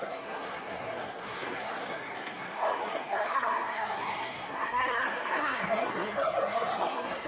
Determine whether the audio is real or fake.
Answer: fake